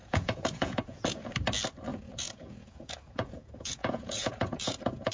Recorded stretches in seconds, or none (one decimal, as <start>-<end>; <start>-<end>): 1.3-1.9